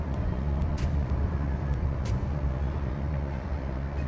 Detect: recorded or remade remade